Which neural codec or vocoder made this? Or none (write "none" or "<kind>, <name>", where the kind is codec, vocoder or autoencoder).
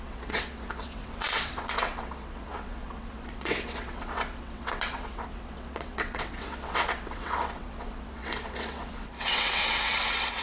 vocoder, WaveNeXt